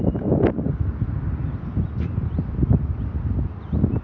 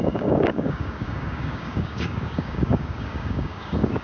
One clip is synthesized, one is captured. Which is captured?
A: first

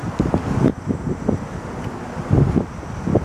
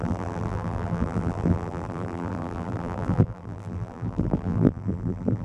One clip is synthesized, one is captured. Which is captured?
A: first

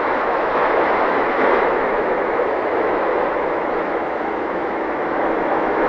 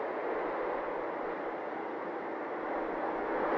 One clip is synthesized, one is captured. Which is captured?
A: second